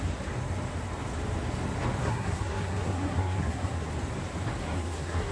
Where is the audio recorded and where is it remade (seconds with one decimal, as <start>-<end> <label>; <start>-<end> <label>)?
0.0-2.0 recorded; 2.0-3.9 remade; 3.9-4.6 recorded; 4.6-5.3 remade